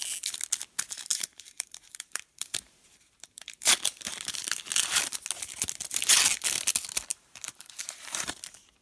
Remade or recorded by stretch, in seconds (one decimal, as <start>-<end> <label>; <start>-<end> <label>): 0.0-1.1 recorded; 1.1-3.7 remade; 3.7-7.1 recorded; 7.1-8.3 remade; 8.3-8.8 recorded